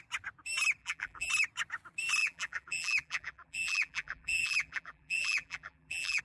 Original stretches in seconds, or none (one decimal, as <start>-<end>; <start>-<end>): 0.0-0.8; 1.3-2.2